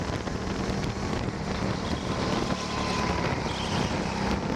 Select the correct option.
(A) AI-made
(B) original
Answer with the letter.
B